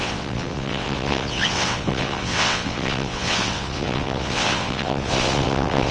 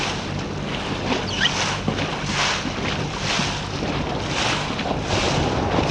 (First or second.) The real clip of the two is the second